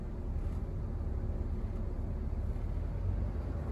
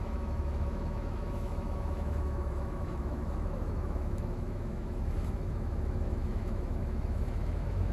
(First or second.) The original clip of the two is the first